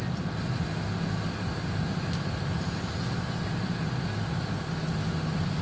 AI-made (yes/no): no